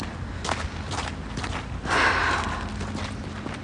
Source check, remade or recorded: recorded